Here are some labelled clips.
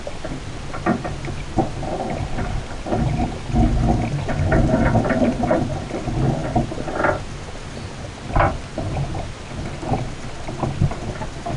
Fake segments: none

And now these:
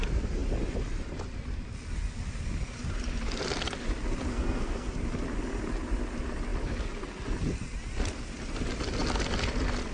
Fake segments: 4.3-4.9 (codec, SNAC)

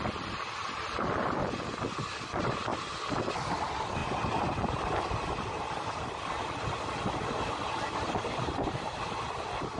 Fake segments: none

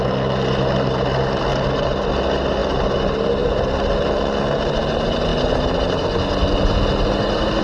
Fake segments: none

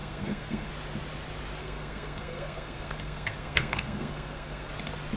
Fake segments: 0.0-0.7 (codec, SNAC); 1.6-4.7

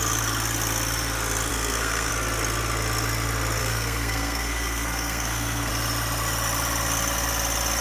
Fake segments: 1.5-2.1 (codec, SNAC); 3.6-5.7

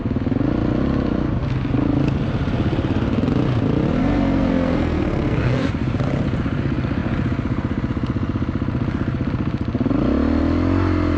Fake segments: 4.0-5.7 (codec, SNAC)